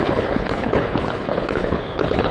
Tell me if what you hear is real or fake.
fake